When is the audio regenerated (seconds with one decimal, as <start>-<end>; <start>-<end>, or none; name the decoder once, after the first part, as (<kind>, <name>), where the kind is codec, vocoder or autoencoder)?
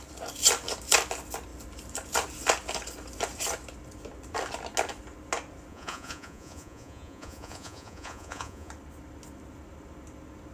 5.7-8.7 (vocoder, Vocos)